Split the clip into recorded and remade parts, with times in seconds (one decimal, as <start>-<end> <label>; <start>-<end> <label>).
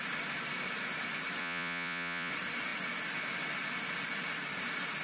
0.0-1.4 recorded; 1.4-2.3 remade; 2.3-5.0 recorded